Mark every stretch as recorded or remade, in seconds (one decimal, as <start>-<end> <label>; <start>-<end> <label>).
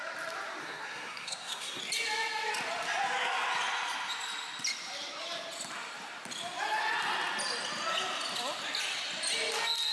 0.0-0.6 recorded; 0.6-1.8 remade; 1.8-9.9 recorded